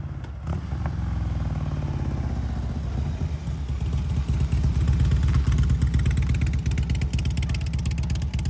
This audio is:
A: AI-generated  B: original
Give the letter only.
B